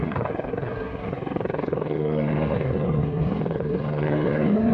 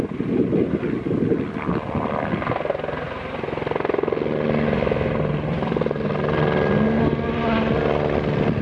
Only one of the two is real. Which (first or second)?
second